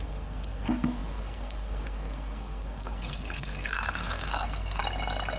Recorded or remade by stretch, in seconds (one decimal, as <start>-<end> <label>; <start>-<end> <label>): 0.0-4.8 remade; 4.8-5.4 recorded